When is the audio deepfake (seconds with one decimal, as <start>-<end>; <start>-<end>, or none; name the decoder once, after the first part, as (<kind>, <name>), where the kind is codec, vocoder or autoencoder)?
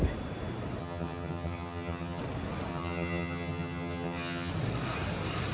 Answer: 0.8-2.2 (vocoder, HiFi-GAN); 2.7-4.5